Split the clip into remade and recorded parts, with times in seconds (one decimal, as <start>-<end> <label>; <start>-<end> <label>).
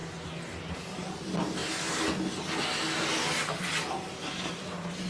0.0-0.6 recorded; 0.6-1.6 remade; 1.6-4.3 recorded; 4.3-5.1 remade